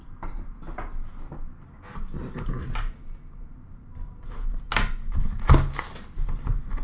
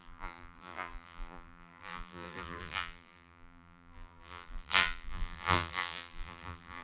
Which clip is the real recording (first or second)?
first